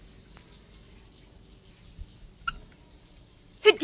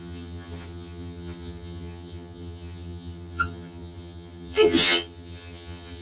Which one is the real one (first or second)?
first